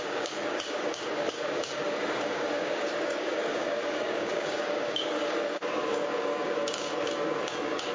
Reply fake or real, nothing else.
fake